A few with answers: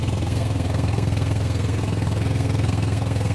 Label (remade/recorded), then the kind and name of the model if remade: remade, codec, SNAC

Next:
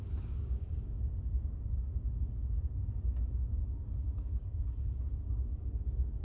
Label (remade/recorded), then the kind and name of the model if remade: remade, codec, DAC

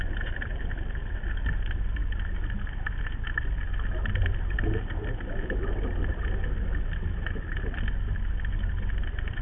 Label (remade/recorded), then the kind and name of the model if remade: recorded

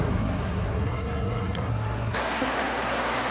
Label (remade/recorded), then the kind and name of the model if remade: remade, codec, SNAC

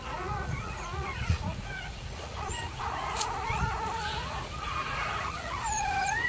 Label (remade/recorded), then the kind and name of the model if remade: remade, vocoder, Vocos